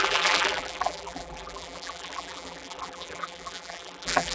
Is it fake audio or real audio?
fake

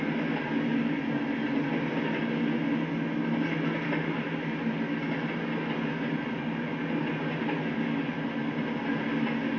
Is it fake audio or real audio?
real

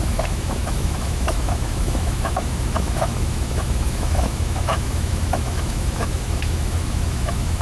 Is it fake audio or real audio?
fake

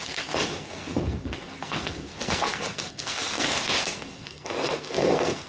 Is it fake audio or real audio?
fake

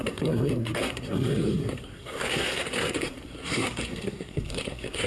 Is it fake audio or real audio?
fake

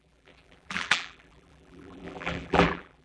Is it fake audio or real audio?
fake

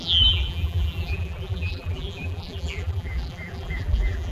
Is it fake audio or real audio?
fake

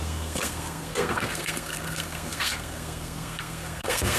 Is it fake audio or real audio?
fake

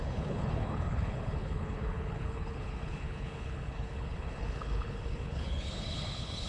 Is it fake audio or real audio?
fake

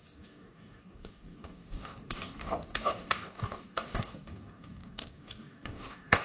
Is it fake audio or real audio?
fake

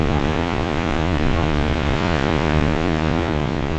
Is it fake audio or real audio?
fake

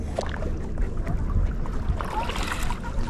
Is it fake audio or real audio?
real